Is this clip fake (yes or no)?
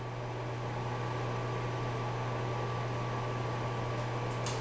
no